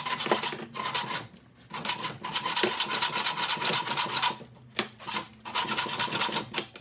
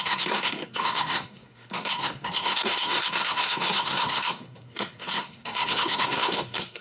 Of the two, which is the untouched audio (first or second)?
first